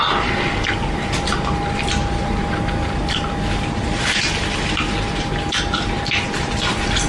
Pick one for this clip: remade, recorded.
recorded